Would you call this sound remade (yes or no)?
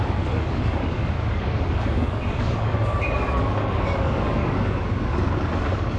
yes